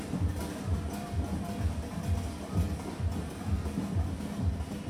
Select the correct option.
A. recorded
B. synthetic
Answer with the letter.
A